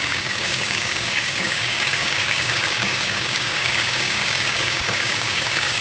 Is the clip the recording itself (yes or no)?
no